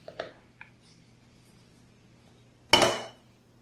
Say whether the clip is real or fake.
real